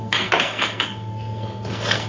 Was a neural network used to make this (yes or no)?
yes